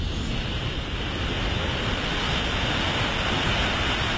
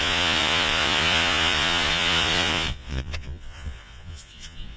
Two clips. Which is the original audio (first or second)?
first